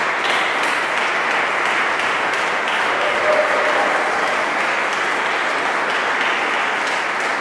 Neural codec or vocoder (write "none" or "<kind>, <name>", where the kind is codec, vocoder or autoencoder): none